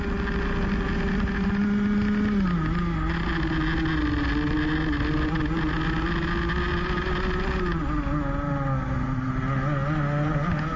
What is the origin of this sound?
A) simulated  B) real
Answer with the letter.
B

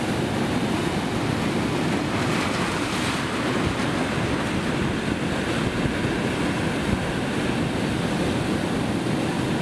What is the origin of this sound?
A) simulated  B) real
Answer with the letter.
B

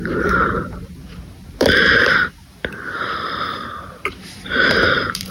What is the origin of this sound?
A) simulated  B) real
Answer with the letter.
A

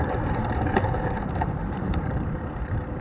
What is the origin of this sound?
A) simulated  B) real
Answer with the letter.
A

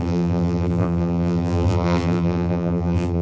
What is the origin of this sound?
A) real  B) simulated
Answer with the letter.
B